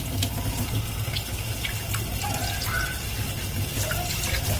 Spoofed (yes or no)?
no